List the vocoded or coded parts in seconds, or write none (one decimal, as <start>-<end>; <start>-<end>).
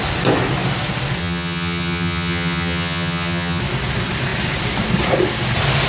1.2-3.6